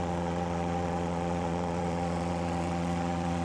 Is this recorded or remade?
remade